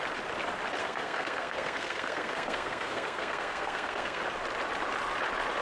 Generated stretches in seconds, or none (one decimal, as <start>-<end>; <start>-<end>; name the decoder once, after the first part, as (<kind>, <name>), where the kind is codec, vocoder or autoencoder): 0.8-4.2 (codec, SNAC)